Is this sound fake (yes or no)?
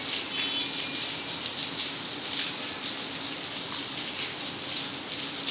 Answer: no